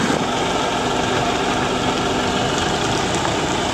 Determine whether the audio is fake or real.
real